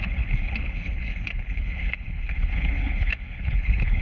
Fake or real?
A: fake